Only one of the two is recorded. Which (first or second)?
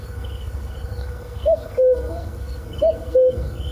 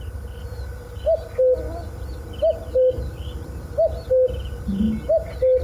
second